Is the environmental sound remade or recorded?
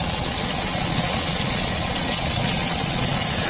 remade